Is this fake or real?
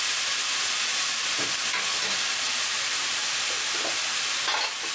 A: real